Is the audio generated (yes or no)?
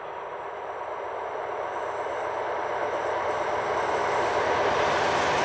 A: no